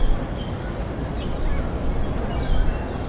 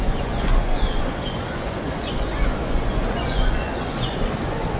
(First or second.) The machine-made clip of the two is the second